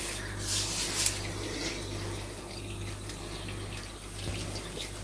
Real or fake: real